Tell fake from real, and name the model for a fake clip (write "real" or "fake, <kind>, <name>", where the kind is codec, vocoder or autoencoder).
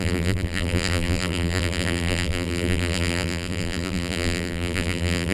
fake, vocoder, BigVGAN v2